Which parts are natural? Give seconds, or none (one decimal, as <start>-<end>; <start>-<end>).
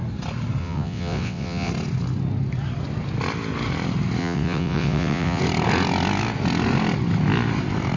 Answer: 0.0-0.6; 1.7-4.2; 5.4-8.0